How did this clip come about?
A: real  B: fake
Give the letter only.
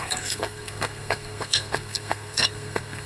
B